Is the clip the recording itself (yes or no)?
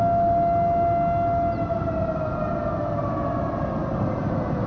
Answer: yes